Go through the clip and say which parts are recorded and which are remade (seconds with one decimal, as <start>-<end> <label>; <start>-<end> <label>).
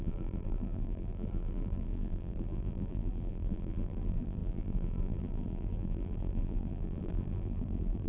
0.0-8.1 remade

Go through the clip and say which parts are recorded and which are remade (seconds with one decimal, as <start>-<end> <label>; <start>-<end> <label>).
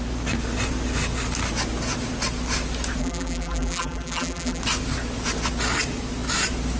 0.0-3.0 recorded; 3.0-4.6 remade; 4.6-6.8 recorded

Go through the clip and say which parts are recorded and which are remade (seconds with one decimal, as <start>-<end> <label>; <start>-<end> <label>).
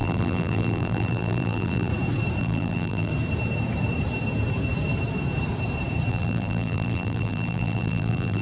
0.0-1.9 remade; 1.9-2.4 recorded; 2.4-3.1 remade; 3.1-6.1 recorded; 6.1-8.4 remade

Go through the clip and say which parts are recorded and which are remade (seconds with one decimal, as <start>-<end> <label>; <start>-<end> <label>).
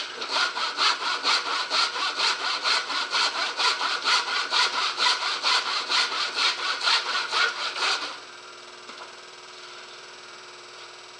0.0-2.8 remade; 2.8-3.6 recorded; 3.6-7.1 remade; 7.1-7.7 recorded; 7.7-11.2 remade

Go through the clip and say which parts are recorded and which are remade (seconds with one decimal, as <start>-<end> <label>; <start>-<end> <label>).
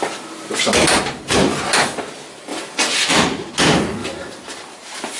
0.0-4.0 recorded; 4.0-5.2 remade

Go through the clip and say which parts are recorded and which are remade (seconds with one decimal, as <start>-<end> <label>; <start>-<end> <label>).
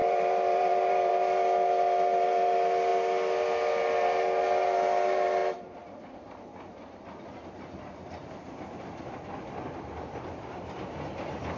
0.0-1.1 remade; 1.1-11.6 recorded